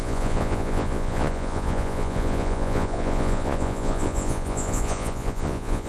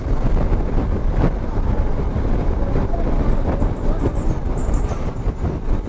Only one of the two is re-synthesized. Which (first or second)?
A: first